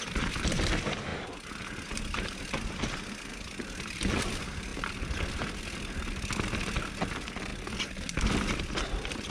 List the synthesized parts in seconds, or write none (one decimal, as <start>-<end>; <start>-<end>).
none